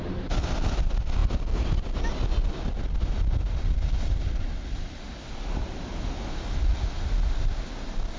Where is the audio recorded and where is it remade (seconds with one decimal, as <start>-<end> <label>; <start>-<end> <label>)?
0.0-8.2 recorded